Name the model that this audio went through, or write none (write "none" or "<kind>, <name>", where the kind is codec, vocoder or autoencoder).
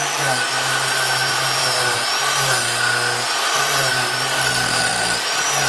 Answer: none